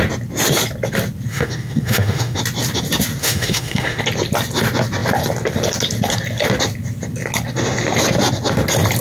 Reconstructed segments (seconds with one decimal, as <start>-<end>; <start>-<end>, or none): 1.3-2.4; 3.2-4.0